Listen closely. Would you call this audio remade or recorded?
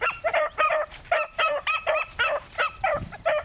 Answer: remade